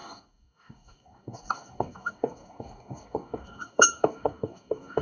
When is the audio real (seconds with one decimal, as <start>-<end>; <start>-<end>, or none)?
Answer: none

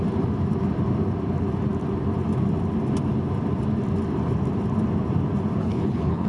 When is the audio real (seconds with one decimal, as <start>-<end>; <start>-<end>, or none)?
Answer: 0.0-5.6

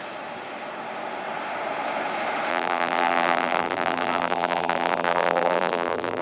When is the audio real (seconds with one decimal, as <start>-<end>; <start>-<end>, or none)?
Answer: 0.0-2.5